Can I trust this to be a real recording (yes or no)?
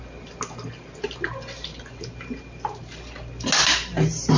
yes